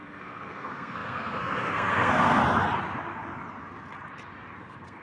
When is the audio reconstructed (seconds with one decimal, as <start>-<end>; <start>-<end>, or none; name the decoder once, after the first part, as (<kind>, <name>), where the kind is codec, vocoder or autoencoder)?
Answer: 0.0-2.4 (codec, SNAC); 4.6-5.0